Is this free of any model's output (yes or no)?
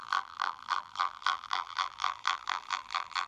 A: no